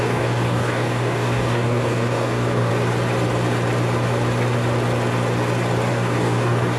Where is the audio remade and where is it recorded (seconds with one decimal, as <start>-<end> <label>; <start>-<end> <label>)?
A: 0.0-2.7 remade; 2.7-5.9 recorded; 5.9-6.8 remade